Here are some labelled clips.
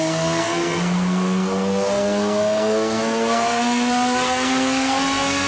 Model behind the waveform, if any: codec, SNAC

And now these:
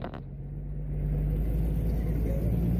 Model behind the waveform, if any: none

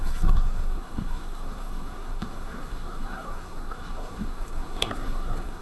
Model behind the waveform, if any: codec, SNAC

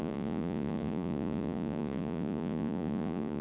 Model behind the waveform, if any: vocoder, Vocos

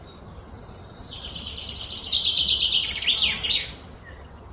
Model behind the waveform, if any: none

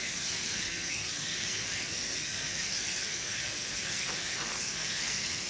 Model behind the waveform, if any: codec, SNAC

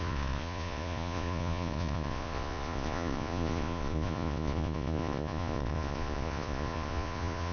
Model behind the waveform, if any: vocoder, Vocos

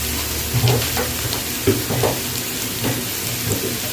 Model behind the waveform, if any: none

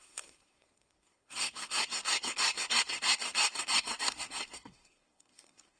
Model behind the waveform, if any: codec, SNAC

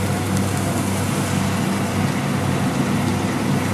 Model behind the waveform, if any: none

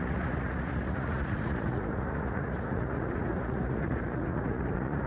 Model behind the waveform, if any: vocoder, Vocos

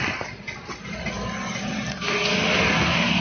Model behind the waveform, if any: none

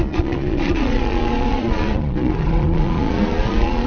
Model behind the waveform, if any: vocoder, Vocos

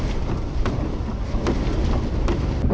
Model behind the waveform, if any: none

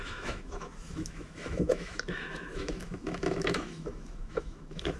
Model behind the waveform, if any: autoencoder, DAC-VAE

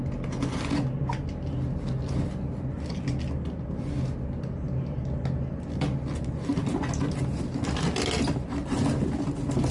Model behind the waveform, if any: none